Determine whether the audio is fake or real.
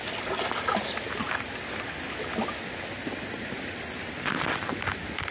real